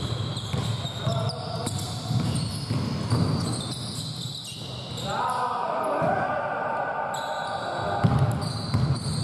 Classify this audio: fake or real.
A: real